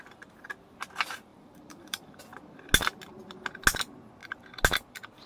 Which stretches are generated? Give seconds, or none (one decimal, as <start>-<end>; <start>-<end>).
1.3-2.2